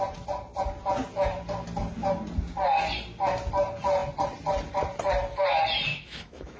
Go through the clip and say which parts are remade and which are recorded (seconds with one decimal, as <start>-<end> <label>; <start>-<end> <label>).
0.0-5.9 recorded; 5.9-6.6 remade